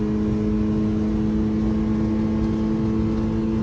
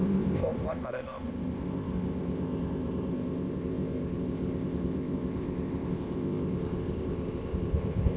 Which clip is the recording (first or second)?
first